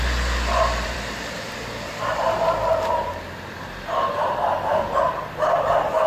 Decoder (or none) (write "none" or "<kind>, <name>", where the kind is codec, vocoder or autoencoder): vocoder, BigVGAN v2